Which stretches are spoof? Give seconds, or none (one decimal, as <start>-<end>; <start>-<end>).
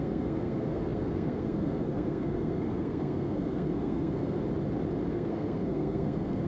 0.0-4.4; 5.1-6.5